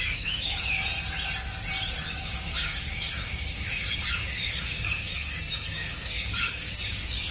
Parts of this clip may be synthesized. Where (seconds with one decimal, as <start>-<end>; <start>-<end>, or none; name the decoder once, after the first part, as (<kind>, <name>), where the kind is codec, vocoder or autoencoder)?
0.0-0.9 (codec, DAC); 2.2-7.3